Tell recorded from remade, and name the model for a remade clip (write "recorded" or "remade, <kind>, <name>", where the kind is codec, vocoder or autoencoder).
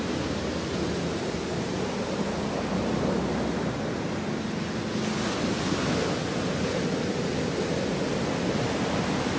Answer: recorded